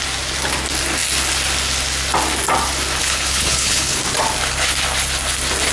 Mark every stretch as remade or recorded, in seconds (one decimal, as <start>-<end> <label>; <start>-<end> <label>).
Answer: 0.0-3.0 recorded; 3.0-4.0 remade; 4.0-5.7 recorded